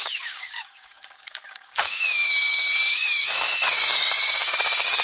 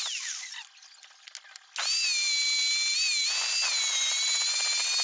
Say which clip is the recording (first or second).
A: second